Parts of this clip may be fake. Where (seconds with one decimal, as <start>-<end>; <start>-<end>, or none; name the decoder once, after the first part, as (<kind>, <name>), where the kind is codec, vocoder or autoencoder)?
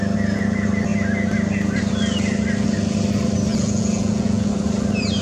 3.5-4.5 (vocoder, Vocos)